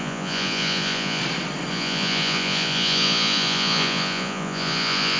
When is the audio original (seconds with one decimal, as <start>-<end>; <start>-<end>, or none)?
1.2-1.7